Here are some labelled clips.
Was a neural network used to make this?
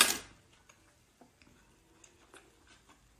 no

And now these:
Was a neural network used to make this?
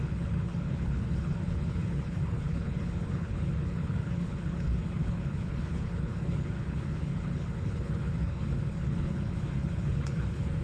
yes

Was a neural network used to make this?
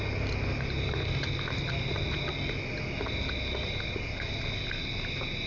no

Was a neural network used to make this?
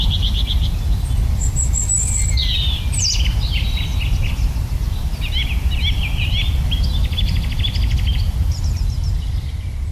no